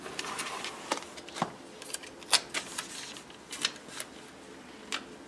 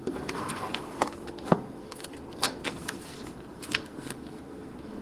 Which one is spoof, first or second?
second